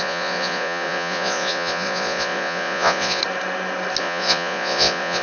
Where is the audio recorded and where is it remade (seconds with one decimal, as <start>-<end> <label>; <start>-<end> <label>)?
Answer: 0.0-3.2 remade; 3.2-4.0 recorded; 4.0-5.2 remade